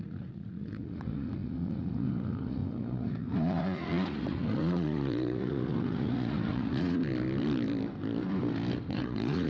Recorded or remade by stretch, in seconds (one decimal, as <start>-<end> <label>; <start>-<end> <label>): 0.0-7.0 remade; 7.0-8.9 recorded; 8.9-9.5 remade